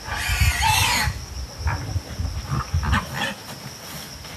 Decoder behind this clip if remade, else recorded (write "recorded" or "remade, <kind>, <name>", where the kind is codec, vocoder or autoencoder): recorded